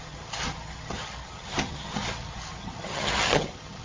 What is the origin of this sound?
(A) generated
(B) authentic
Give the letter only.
A